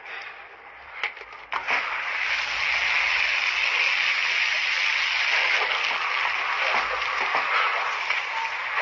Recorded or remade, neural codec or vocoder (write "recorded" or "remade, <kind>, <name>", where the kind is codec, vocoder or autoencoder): recorded